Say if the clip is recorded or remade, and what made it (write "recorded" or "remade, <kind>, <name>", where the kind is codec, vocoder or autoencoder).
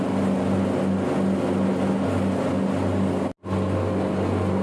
recorded